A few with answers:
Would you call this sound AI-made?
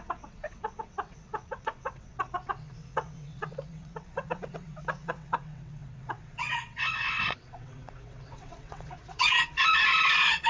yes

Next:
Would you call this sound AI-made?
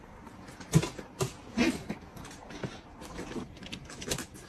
no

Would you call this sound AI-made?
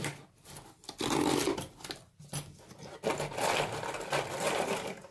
no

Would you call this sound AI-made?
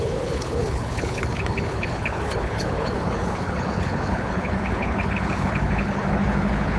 yes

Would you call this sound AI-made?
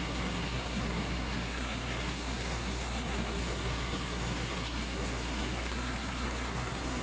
yes